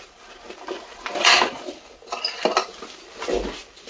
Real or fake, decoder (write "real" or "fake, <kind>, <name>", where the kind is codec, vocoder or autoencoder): real